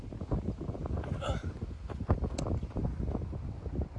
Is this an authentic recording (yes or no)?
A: yes